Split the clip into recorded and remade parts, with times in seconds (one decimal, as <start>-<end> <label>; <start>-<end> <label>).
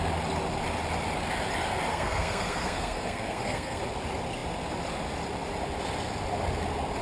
0.0-1.9 recorded; 1.9-3.8 remade; 3.8-7.0 recorded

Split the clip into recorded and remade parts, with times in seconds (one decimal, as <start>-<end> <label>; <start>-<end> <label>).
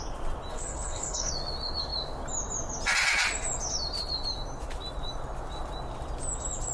0.0-0.5 recorded; 0.5-1.3 remade; 1.3-6.7 recorded